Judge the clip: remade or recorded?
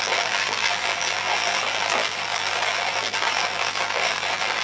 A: remade